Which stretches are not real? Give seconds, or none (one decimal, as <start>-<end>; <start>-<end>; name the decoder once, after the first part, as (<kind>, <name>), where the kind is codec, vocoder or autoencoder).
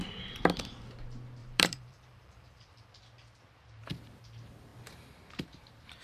1.4-2.9 (vocoder, BigVGAN v2)